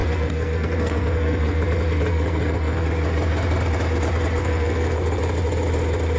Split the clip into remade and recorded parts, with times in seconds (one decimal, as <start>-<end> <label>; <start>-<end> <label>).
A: 0.0-1.6 remade; 1.6-2.1 recorded; 2.1-2.9 remade; 2.9-4.4 recorded; 4.4-5.2 remade; 5.2-6.2 recorded